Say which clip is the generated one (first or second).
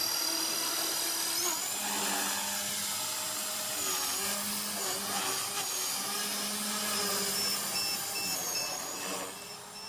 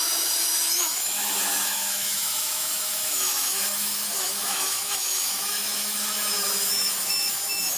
second